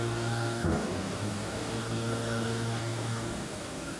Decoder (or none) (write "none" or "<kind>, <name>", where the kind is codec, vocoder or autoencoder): codec, DAC